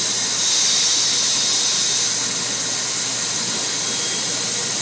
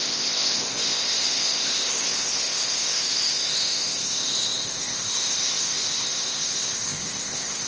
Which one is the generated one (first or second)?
second